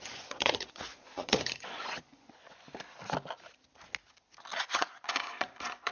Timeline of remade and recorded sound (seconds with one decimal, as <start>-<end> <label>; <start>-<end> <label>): 0.0-2.7 remade; 2.7-4.6 recorded; 4.6-5.9 remade